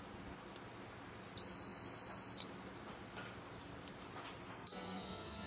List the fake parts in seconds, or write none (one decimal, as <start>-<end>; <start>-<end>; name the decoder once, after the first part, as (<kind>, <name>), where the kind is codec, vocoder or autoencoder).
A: 4.5-5.5 (codec, SNAC)